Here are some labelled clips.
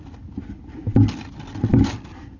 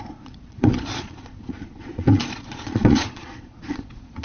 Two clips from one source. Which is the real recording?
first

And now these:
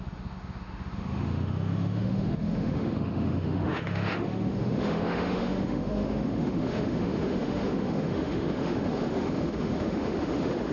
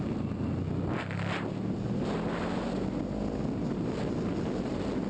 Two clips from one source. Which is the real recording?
second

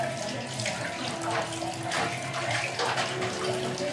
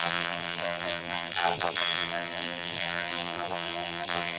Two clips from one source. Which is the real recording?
first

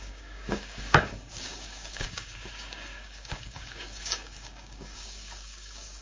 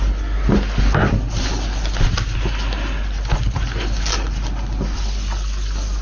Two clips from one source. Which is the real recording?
second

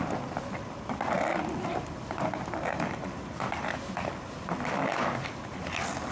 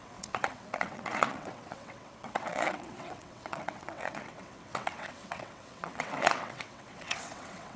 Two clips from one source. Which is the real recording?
first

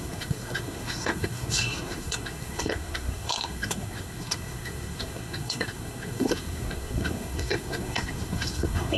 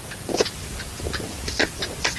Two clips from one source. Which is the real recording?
second